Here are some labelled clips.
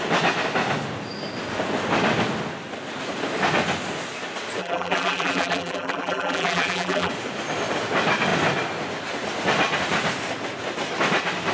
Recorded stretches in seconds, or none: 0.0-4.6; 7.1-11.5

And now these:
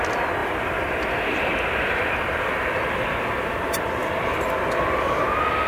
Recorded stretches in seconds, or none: 0.0-0.4; 3.8-5.7

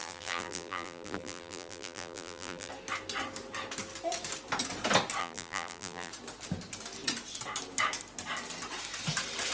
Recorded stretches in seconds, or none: 2.7-5.2; 6.1-9.5

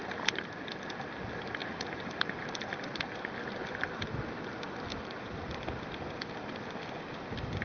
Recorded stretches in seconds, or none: 0.5-1.6; 3.0-4.9; 5.6-7.6

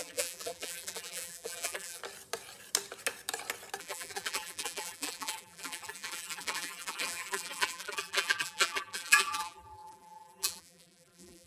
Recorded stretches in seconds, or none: 2.0-3.8

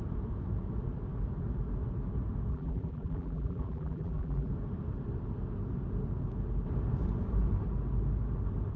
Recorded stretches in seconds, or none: 0.0-2.5; 4.5-8.8